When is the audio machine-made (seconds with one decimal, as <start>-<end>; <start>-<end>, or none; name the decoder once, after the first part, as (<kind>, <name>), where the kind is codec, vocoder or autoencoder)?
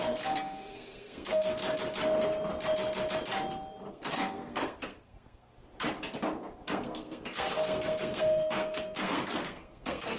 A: 0.0-1.6 (codec, SNAC); 3.9-5.5; 6.7-10.2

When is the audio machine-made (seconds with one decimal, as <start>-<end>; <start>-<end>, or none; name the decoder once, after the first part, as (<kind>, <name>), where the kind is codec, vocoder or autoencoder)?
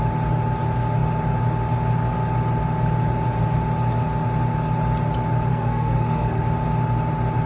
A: 5.5-6.4 (codec, SNAC)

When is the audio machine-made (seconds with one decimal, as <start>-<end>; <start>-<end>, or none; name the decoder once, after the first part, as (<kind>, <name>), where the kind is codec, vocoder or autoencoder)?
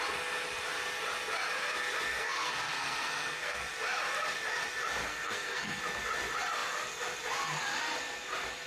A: 2.1-3.7 (codec, SNAC); 5.0-5.8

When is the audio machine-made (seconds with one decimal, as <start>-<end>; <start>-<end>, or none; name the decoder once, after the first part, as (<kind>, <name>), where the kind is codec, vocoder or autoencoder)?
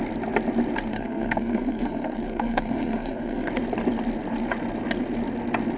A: 0.9-3.5 (codec, SNAC)